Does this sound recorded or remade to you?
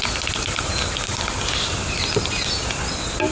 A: recorded